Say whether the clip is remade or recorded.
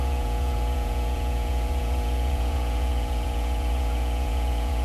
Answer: remade